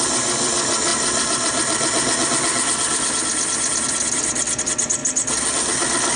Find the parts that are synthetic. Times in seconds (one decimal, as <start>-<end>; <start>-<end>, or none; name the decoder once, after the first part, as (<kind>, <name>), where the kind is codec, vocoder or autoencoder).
none